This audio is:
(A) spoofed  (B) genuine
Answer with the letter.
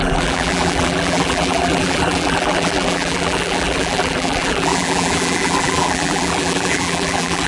A